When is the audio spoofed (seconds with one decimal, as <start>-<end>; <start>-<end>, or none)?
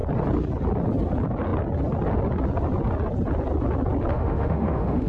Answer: 4.1-5.1